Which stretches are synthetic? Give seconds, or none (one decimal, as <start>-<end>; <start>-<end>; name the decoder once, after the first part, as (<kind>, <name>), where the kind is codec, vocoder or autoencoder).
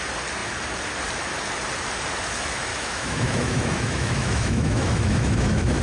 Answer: 2.7-5.8 (autoencoder, DAC-VAE)